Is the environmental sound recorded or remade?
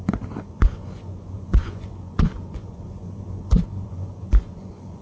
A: remade